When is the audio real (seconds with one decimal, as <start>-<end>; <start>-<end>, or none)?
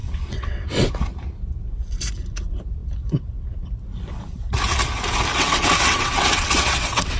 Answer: 0.9-5.3